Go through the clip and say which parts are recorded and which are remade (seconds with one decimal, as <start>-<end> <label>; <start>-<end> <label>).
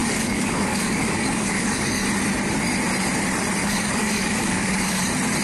0.0-2.0 remade; 2.0-3.6 recorded; 3.6-5.0 remade; 5.0-5.4 recorded